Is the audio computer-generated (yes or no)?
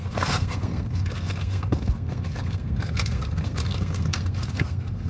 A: yes